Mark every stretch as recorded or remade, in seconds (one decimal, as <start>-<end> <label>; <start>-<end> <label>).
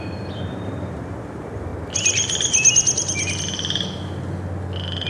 0.0-1.7 remade; 1.7-5.1 recorded